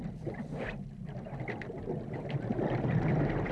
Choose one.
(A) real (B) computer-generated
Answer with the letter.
A